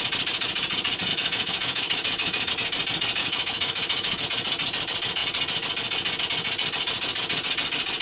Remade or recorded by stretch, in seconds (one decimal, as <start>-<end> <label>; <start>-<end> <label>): 0.0-1.1 recorded; 1.1-2.5 remade; 2.5-3.2 recorded; 3.2-4.2 remade; 4.2-8.0 recorded